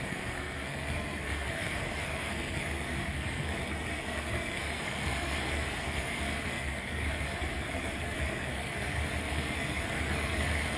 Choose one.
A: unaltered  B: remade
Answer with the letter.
B